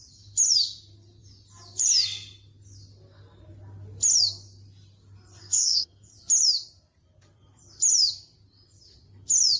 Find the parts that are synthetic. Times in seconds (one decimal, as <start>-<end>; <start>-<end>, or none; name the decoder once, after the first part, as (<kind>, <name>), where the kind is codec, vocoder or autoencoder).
5.4-6.1 (codec, SNAC)